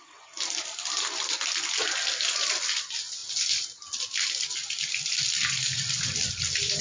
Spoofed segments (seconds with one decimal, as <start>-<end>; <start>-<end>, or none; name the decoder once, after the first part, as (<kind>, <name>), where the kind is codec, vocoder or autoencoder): none